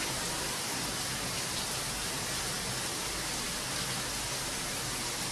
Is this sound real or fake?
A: real